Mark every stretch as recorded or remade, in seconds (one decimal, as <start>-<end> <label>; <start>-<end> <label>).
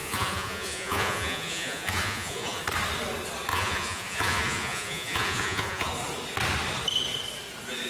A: 0.0-2.6 remade; 2.6-3.5 recorded; 3.5-5.9 remade; 5.9-7.9 recorded